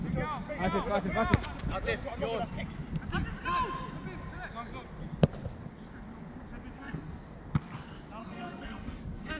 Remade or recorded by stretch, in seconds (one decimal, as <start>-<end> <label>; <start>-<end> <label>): 0.0-6.8 recorded; 6.8-7.4 remade; 7.4-8.2 recorded; 8.2-9.4 remade